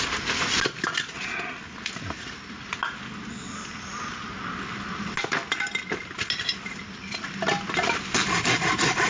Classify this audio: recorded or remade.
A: recorded